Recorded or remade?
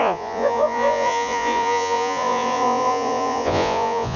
remade